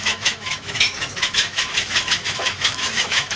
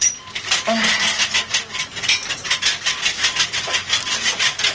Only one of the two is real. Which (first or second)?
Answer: second